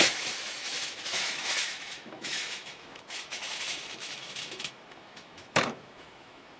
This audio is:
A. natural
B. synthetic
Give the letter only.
B